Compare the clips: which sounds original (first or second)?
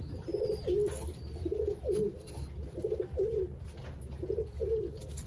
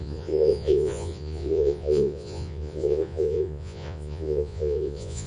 first